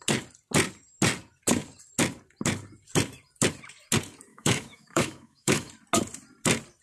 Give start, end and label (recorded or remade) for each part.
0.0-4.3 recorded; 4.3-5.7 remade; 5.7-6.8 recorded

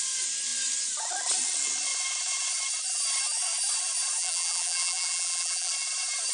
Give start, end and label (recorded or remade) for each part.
0.0-4.2 recorded; 4.2-5.7 remade; 5.7-6.3 recorded

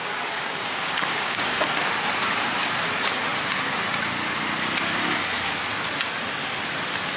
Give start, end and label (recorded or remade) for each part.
0.0-1.6 remade; 1.6-7.2 recorded